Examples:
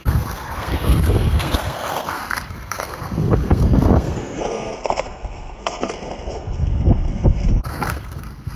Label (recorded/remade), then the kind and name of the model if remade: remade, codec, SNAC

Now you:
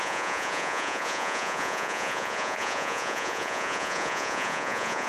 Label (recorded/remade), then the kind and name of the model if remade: remade, vocoder, Vocos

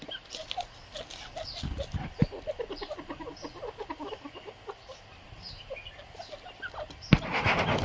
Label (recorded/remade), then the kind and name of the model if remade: recorded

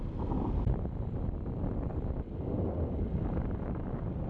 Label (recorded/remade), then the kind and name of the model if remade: recorded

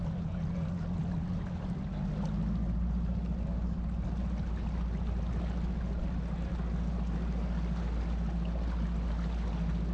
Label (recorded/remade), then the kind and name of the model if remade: recorded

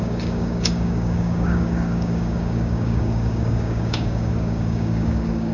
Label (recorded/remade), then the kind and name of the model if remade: remade, codec, DAC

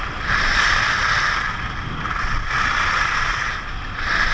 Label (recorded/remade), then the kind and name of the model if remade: recorded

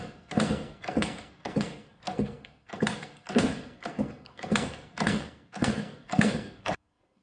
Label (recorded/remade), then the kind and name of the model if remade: remade, codec, SNAC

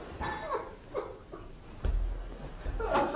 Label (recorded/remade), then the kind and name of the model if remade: recorded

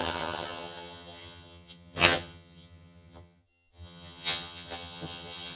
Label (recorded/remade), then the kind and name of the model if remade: remade, vocoder, HiFi-GAN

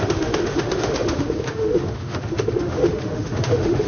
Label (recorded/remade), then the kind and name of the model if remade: remade, autoencoder, DAC-VAE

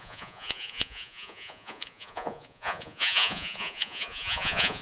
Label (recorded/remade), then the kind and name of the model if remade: remade, vocoder, Vocos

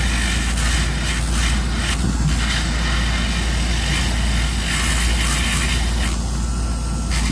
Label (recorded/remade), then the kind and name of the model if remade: recorded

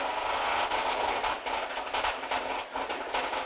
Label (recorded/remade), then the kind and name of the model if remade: recorded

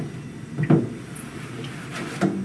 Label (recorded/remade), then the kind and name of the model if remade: recorded